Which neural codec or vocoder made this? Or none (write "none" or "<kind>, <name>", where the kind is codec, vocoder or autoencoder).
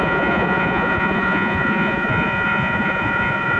vocoder, Vocos